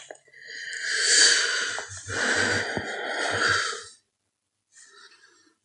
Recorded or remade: recorded